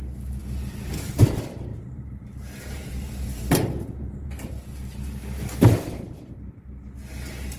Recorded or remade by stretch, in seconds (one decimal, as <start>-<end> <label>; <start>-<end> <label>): 0.0-1.7 recorded; 1.7-4.5 remade; 4.5-7.6 recorded